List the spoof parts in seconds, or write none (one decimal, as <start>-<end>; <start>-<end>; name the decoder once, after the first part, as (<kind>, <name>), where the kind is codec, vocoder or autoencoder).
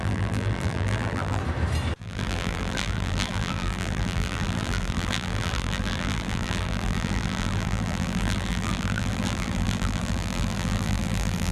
0.0-1.4 (vocoder, BigVGAN v2); 2.0-11.5